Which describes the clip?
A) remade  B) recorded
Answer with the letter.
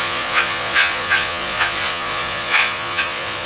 A